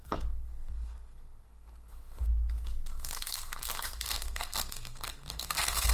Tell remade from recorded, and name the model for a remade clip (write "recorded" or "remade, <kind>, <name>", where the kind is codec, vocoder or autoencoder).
remade, codec, SNAC